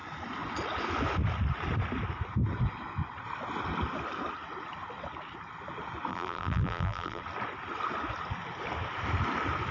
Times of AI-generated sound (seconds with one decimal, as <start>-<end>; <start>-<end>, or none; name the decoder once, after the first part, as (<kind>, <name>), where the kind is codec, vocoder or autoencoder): 6.1-7.2 (vocoder, BigVGAN v2)